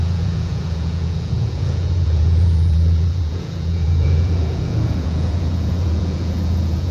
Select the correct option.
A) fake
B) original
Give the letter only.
A